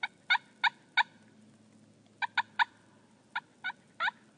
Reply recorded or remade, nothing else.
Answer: recorded